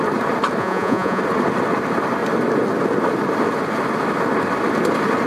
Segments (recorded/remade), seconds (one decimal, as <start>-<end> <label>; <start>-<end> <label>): 0.0-0.6 recorded; 0.6-1.2 remade; 1.2-5.3 recorded

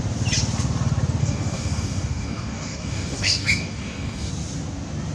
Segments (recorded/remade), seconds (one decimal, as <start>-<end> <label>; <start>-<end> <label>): 0.0-1.2 recorded; 1.2-4.3 remade; 4.3-5.1 recorded